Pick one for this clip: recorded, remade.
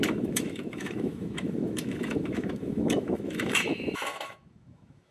remade